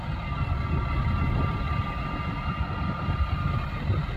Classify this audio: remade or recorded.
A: recorded